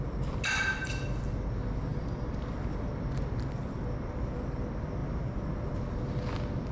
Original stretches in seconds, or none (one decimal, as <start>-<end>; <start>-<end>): 0.0-1.9; 2.9-6.7